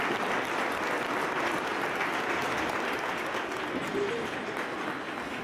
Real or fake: real